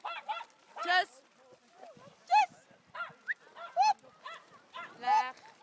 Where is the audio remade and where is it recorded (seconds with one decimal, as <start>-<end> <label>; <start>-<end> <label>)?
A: 0.0-5.6 recorded